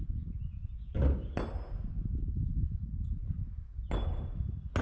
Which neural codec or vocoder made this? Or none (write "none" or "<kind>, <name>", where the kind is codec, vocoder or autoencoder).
none